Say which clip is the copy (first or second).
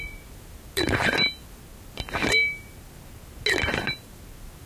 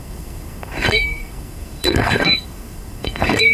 second